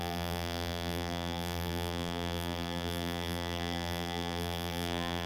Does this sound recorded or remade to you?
remade